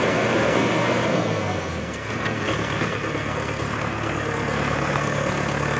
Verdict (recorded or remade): remade